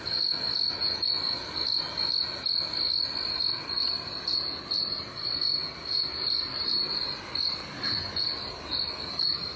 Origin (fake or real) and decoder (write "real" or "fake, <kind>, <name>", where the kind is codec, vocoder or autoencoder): real